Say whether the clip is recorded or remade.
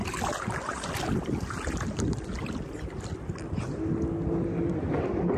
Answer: recorded